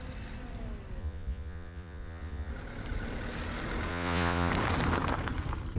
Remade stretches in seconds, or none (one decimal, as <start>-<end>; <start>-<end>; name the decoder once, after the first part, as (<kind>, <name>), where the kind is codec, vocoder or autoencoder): 1.0-2.5 (vocoder, Vocos); 3.9-4.5